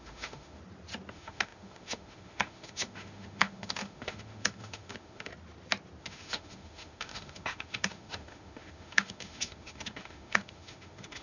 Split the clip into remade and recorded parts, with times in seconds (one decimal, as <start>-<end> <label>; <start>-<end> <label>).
0.0-0.6 remade; 0.6-1.1 recorded; 1.1-5.3 remade; 5.3-6.0 recorded; 6.0-11.2 remade